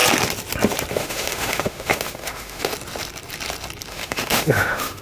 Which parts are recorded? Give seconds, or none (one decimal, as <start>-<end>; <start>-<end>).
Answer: 0.0-0.9; 2.7-3.9